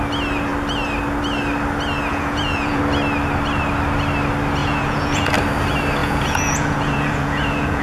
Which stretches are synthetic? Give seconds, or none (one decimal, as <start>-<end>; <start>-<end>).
2.1-2.8; 4.6-5.3; 6.0-7.8